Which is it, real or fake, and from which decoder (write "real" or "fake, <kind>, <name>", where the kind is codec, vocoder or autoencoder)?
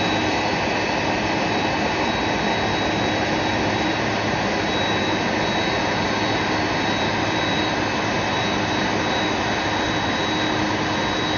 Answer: real